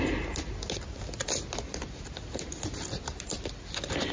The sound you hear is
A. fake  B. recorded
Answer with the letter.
B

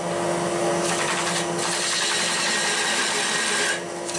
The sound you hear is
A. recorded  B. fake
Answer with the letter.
A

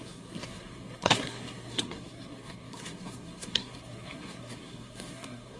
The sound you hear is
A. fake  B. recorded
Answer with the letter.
A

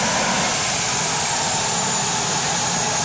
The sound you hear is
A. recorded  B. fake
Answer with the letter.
A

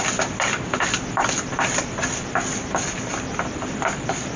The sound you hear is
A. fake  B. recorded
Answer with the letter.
B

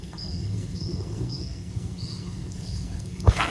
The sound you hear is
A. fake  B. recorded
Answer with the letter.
A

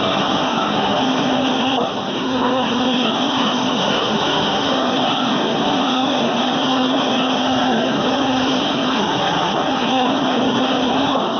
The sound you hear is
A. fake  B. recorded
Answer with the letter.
A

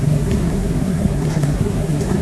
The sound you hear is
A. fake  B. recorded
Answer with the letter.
A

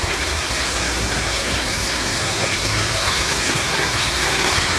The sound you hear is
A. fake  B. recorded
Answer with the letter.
A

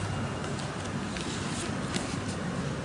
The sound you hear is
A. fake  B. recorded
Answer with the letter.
B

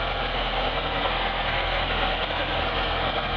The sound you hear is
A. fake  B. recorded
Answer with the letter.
A